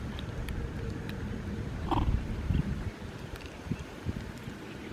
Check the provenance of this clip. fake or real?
real